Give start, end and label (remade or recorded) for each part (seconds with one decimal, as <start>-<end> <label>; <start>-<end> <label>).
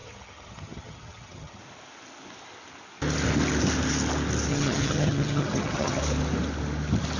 0.0-1.6 remade; 1.6-4.5 recorded; 4.5-6.0 remade; 6.0-7.2 recorded